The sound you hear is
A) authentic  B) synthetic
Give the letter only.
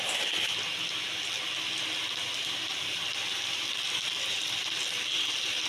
A